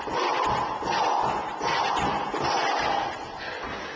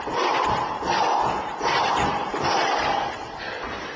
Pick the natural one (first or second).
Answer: first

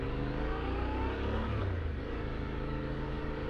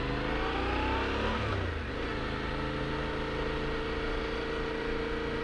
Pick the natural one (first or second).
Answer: second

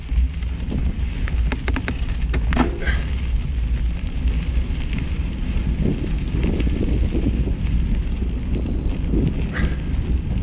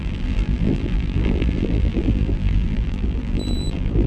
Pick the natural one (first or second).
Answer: first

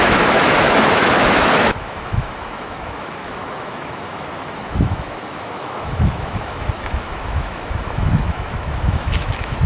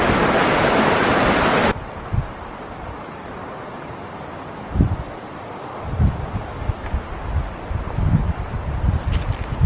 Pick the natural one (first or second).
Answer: second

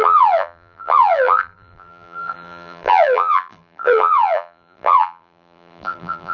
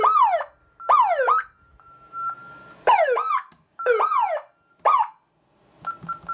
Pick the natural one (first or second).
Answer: second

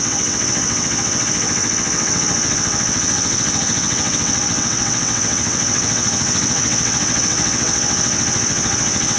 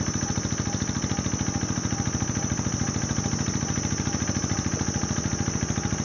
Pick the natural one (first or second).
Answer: second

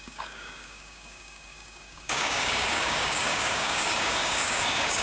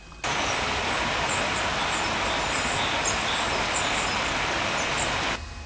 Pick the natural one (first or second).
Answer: second